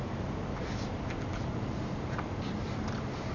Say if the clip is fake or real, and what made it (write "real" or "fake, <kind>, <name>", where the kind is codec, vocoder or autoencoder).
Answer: real